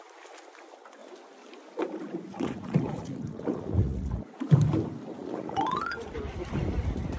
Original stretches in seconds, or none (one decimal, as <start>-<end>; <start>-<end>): 0.0-2.3; 4.4-5.2; 6.1-7.2

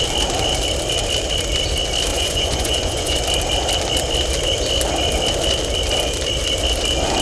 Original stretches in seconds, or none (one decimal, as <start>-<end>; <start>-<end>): 0.0-2.1; 3.2-7.2